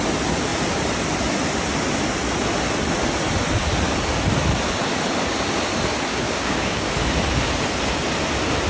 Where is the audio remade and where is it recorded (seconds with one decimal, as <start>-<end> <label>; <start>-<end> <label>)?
0.0-6.1 recorded; 6.1-6.9 remade; 6.9-8.7 recorded